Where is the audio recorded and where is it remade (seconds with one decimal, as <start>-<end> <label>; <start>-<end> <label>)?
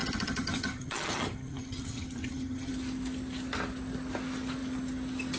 0.0-2.7 remade; 2.7-5.4 recorded